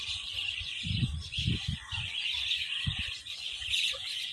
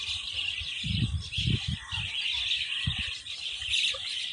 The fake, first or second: first